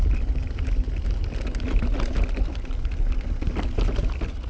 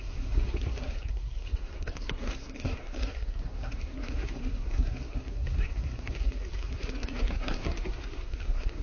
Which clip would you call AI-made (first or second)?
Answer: second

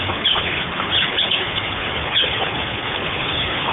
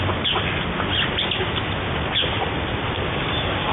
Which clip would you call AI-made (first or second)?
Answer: first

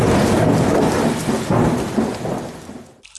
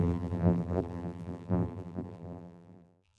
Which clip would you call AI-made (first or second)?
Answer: second